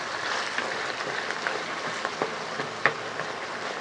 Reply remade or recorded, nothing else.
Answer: recorded